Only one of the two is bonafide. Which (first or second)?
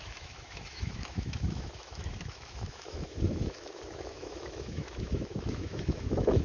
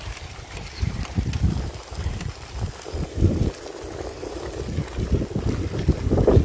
second